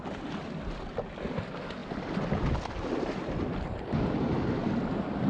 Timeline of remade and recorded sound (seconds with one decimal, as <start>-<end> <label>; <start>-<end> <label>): 0.0-5.3 recorded